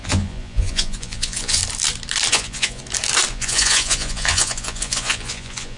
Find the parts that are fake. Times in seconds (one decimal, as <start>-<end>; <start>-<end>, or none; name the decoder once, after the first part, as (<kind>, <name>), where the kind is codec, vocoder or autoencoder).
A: 0.0-1.6 (vocoder, Vocos); 2.3-2.8; 3.3-5.8